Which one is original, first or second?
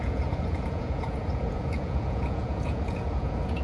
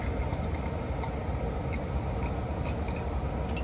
second